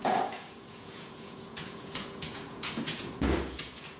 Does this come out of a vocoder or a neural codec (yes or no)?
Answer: yes